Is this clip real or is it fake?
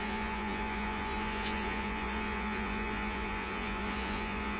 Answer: fake